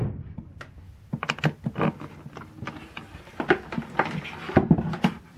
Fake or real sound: real